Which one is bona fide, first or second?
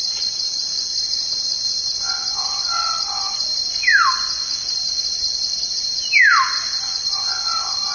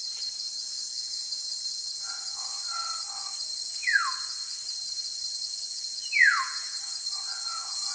first